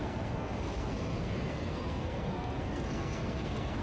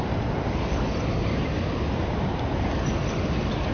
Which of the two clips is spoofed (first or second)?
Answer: first